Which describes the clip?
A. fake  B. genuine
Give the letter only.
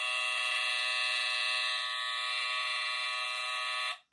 B